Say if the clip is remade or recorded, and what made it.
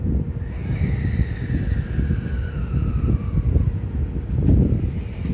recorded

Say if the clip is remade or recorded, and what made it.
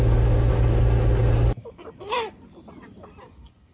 recorded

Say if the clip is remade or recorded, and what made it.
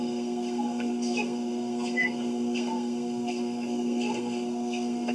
remade, codec, SNAC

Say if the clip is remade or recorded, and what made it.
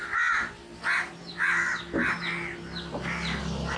recorded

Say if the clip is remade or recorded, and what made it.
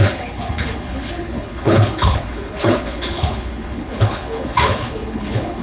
remade, codec, HILCodec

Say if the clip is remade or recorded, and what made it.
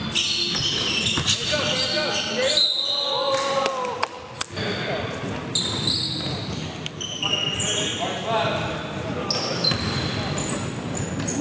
recorded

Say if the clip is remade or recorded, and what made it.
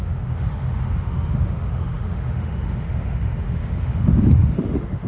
remade, autoencoder, DAC-VAE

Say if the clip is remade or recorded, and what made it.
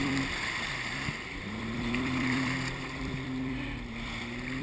remade, vocoder, BigVGAN v2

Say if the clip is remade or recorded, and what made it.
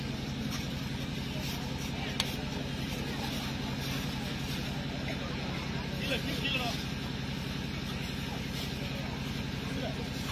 recorded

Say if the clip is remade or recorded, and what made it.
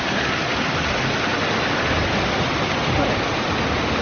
recorded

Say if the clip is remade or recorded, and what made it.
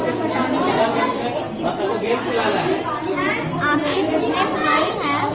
recorded